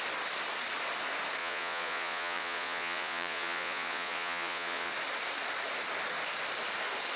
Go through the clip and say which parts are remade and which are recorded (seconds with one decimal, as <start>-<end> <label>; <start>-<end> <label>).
0.0-1.4 recorded; 1.4-4.9 remade; 4.9-7.2 recorded